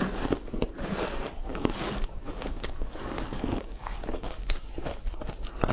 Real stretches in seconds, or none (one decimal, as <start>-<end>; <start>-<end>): 0.0-1.5; 4.9-5.7